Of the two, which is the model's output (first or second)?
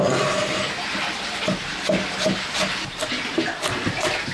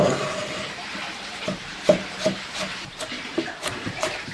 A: second